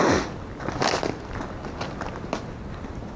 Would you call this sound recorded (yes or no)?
yes